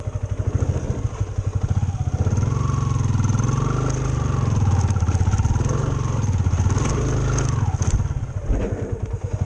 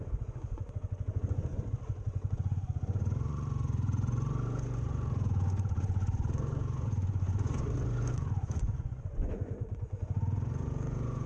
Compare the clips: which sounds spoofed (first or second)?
second